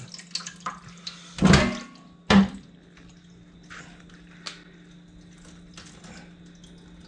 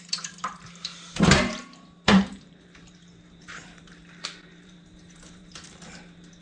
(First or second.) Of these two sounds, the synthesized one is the second